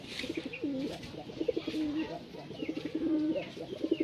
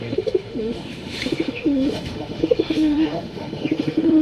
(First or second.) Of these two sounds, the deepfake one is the second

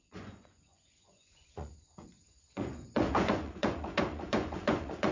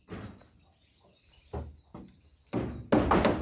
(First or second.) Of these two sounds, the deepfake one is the first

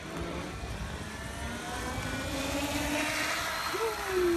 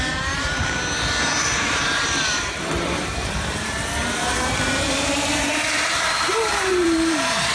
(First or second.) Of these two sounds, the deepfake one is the second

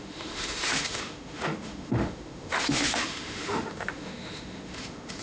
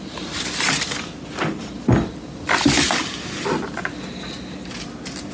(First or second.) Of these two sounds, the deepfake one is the first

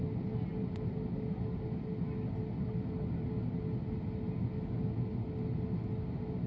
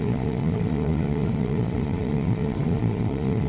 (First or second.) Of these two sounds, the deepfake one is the second